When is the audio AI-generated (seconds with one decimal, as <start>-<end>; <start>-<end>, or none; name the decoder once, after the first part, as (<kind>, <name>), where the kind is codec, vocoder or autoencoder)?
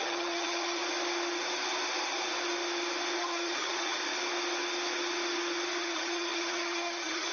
0.0-0.8 (vocoder, HiFi-GAN); 3.2-4.0; 5.8-7.3